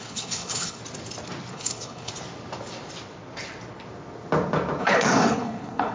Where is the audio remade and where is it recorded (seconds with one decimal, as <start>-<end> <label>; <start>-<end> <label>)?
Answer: 0.0-0.8 remade; 0.8-1.5 recorded; 1.5-2.1 remade; 2.1-4.8 recorded; 4.8-5.9 remade